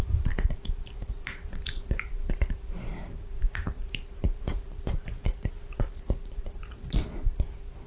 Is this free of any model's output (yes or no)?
no